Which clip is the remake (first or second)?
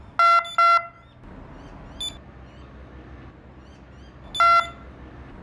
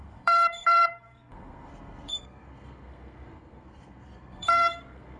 second